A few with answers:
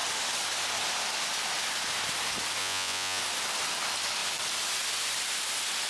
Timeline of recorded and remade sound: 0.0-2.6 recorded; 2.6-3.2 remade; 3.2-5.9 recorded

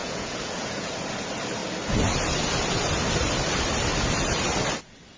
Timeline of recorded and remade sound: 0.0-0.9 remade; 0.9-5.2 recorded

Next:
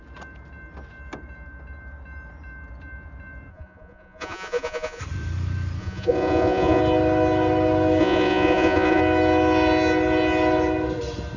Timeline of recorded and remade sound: 0.0-3.5 recorded; 3.5-5.0 remade; 5.0-5.8 recorded; 5.8-6.8 remade; 6.8-8.0 recorded; 8.0-9.0 remade; 9.0-11.4 recorded